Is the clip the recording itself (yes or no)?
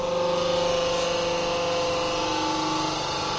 yes